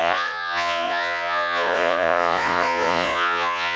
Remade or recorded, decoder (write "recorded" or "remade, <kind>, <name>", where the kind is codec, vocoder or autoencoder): remade, vocoder, Vocos